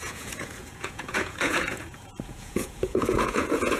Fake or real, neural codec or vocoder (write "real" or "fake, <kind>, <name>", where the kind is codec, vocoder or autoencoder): fake, vocoder, Vocos